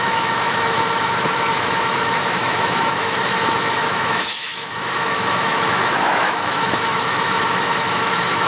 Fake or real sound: fake